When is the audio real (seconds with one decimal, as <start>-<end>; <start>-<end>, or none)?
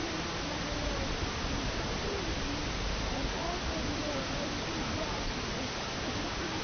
0.0-6.6